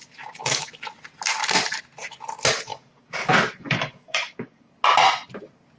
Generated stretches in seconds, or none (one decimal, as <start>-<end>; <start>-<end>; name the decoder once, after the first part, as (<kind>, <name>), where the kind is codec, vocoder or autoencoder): 2.7-4.7 (codec, DAC)